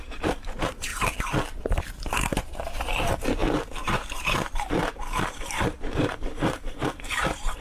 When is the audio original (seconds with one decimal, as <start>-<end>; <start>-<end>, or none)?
0.9-3.0